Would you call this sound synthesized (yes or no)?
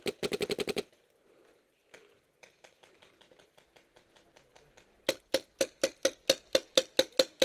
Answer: no